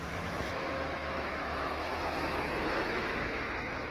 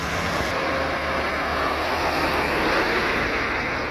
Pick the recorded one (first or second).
second